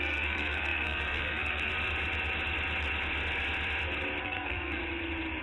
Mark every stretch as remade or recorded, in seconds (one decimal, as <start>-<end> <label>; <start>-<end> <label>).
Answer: 0.0-1.7 remade; 1.7-4.2 recorded; 4.2-4.8 remade; 4.8-5.4 recorded